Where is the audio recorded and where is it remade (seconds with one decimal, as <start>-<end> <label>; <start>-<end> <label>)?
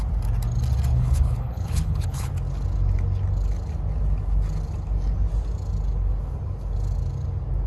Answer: 0.0-0.9 recorded; 0.9-2.3 remade; 2.3-7.7 recorded